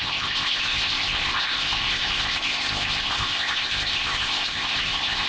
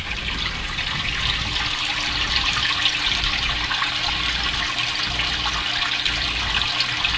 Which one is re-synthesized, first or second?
first